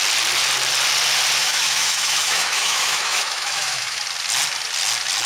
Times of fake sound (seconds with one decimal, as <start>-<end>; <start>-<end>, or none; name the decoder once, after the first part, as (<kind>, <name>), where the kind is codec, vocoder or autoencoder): 1.4-4.0 (autoencoder, DAC-VAE)